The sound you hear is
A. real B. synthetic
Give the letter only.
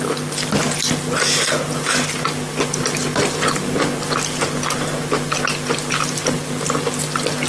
A